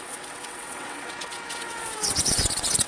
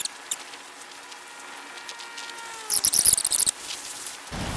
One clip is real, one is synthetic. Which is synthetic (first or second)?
first